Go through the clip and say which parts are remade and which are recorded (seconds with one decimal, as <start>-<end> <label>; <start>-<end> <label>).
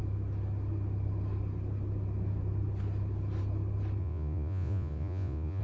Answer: 0.0-4.0 recorded; 4.0-5.6 remade